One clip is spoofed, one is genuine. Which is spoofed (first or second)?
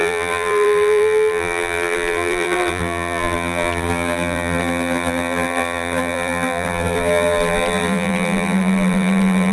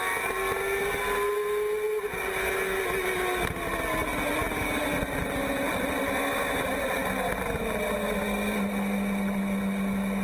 first